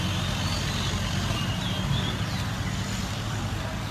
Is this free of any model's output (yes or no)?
yes